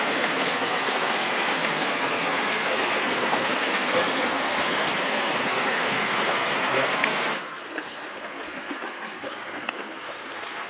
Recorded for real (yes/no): no